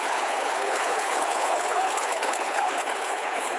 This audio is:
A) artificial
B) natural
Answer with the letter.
A